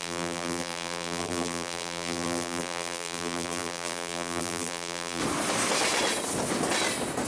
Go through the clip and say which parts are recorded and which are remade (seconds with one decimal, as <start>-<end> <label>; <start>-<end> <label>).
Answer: 0.0-5.2 remade; 5.2-7.3 recorded